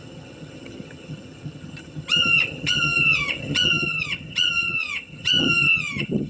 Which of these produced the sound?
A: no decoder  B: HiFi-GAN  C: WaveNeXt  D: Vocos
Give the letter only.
B